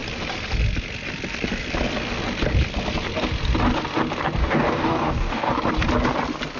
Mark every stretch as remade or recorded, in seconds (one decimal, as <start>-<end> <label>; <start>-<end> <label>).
0.0-4.4 recorded; 4.4-5.5 remade; 5.5-6.6 recorded